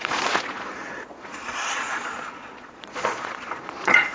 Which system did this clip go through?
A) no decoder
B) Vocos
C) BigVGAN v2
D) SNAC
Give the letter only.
B